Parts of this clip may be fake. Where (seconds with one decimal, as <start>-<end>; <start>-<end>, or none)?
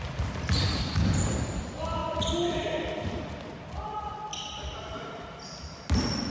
none